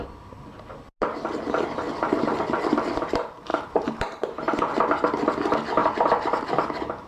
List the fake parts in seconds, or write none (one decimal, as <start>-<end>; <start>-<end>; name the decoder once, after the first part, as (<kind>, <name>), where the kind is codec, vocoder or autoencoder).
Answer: 3.5-4.7 (vocoder, BigVGAN v2); 5.8-7.1